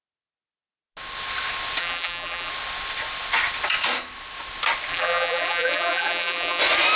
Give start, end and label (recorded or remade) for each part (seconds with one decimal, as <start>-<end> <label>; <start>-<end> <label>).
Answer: 0.0-1.8 recorded; 1.8-2.5 remade; 2.5-4.9 recorded; 4.9-6.6 remade; 6.6-7.0 recorded